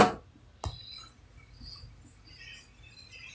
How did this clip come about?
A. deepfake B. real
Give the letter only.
B